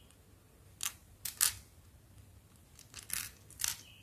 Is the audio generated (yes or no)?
no